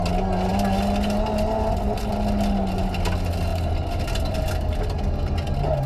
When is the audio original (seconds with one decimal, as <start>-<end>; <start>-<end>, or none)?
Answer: 0.0-5.9